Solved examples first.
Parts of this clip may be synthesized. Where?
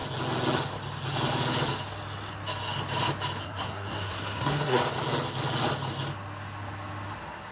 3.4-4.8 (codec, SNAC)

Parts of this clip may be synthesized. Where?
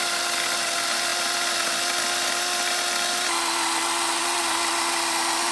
none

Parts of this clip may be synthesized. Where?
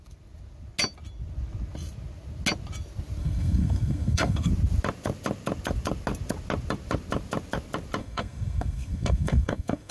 3.2-4.5 (codec, SNAC); 8.0-9.9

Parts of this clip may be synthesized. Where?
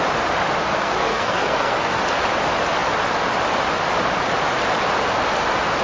0.6-2.0 (codec, SNAC)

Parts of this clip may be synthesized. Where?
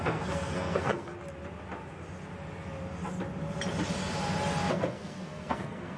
0.0-1.1 (codec, SNAC); 4.7-6.0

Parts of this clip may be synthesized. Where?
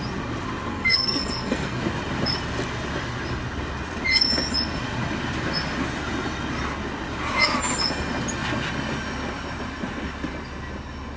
0.7-1.8 (codec, SNAC)